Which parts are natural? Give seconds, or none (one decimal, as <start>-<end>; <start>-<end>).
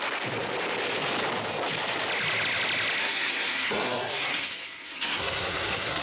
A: 0.0-3.0